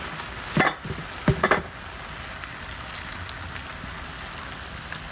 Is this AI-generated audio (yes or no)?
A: no